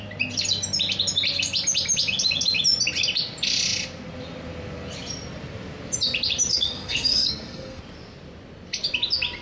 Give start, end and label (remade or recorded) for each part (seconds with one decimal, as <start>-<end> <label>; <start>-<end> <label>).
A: 0.0-6.5 recorded; 6.5-7.8 remade; 7.8-9.4 recorded